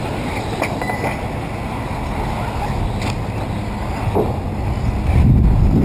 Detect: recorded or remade recorded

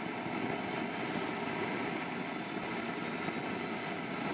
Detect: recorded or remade recorded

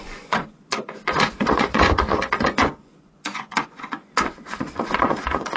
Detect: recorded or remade remade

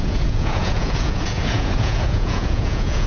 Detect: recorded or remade remade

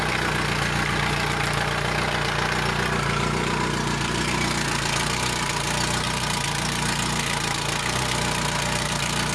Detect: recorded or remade recorded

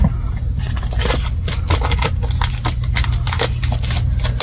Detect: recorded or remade recorded